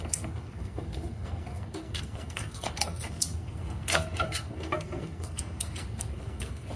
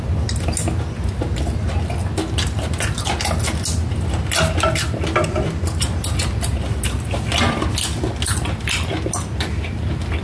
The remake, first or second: first